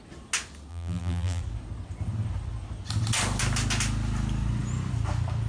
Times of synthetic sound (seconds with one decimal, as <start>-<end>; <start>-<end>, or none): 0.7-1.4